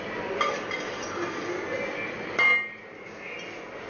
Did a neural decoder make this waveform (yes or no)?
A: no